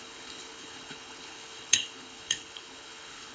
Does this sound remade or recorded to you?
remade